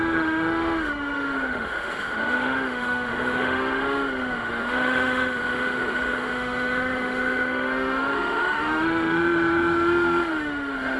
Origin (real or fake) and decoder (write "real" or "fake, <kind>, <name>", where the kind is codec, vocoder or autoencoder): fake, autoencoder, DAC-VAE